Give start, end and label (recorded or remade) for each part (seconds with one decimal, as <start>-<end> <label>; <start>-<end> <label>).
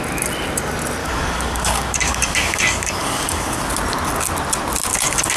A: 0.0-1.0 recorded; 1.0-3.7 remade; 3.7-4.9 recorded; 4.9-5.4 remade